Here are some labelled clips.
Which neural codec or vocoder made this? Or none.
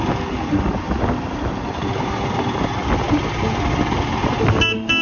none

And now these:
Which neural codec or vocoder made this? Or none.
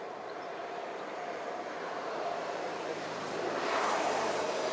vocoder, BigVGAN v2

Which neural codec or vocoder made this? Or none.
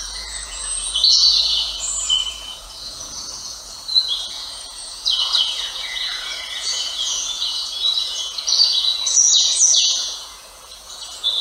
vocoder, Vocos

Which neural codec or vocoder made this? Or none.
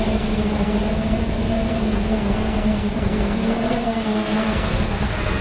codec, SNAC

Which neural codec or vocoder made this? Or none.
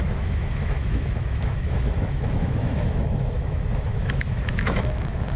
autoencoder, DAC-VAE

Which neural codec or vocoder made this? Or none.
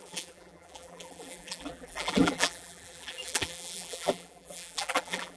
vocoder, BigVGAN v2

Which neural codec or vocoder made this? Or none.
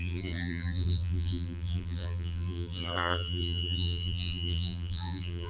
vocoder, BigVGAN v2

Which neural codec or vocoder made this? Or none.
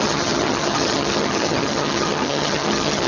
vocoder, HiFi-GAN